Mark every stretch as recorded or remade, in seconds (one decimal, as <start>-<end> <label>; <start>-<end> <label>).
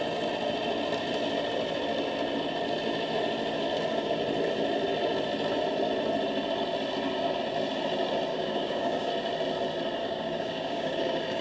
0.0-8.3 recorded; 8.3-9.1 remade; 9.1-10.0 recorded; 10.0-11.4 remade